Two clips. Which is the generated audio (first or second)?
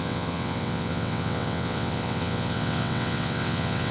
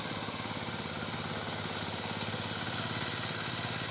first